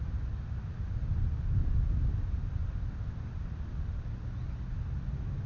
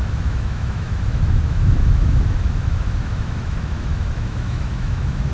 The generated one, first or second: second